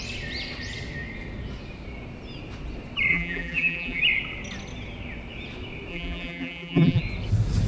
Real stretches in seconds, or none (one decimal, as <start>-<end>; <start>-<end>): 0.0-3.1; 4.0-5.9; 7.0-7.7